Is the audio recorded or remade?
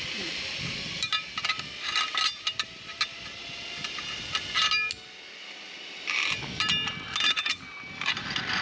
recorded